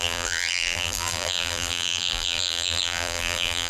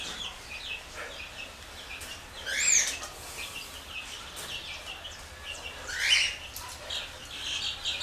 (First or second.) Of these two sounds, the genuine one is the second